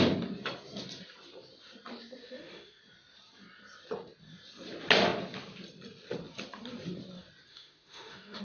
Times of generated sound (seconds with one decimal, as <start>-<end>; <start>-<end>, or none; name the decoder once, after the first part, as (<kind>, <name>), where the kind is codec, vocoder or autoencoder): 2.2-2.8 (autoencoder, DAC-VAE); 7.5-8.4